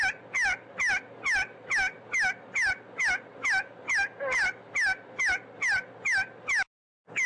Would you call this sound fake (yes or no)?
no